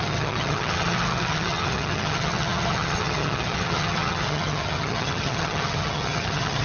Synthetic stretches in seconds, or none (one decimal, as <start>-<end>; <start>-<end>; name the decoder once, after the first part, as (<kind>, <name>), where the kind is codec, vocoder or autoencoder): 0.0-6.6 (vocoder, HiFi-GAN)